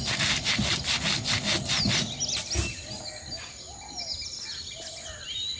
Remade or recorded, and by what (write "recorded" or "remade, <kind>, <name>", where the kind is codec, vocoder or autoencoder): recorded